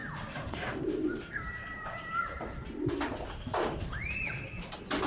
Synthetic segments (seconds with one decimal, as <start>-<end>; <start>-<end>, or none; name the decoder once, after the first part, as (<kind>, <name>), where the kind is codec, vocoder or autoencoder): 0.0-2.4 (vocoder, BigVGAN v2); 3.5-4.1